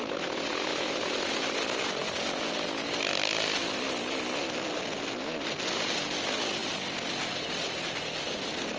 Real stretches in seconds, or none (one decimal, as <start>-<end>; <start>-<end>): 0.0-8.8